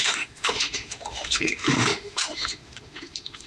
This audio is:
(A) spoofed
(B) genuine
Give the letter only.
A